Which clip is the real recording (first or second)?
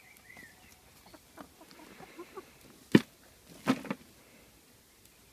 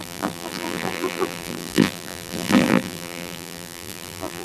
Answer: first